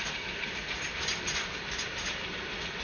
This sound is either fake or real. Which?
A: real